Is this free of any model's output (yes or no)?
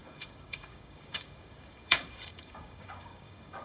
no